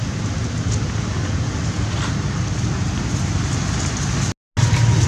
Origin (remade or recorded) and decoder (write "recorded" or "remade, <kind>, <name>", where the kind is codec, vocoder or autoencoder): recorded